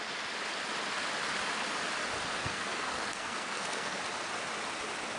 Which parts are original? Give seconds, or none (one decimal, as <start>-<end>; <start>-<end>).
0.0-2.4; 4.0-5.2